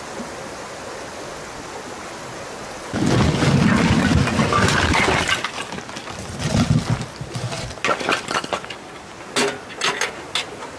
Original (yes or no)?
yes